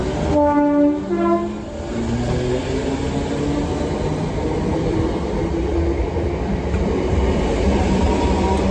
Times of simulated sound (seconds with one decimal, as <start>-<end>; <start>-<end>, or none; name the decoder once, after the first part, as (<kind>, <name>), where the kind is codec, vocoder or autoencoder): none